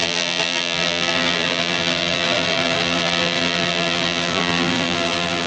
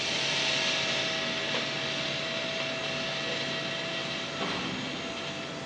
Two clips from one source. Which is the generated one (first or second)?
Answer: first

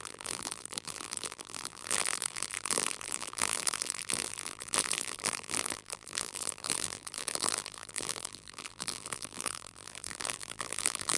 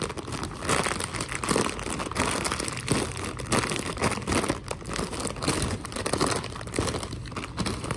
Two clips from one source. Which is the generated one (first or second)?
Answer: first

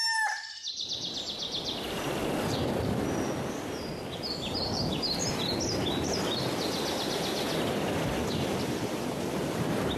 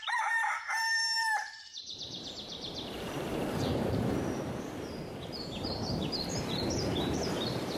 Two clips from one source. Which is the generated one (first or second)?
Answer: second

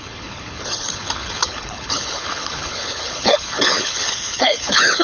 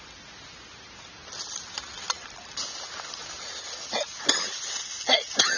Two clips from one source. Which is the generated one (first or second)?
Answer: first